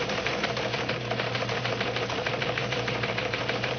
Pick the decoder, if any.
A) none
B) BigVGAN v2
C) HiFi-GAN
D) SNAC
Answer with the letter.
B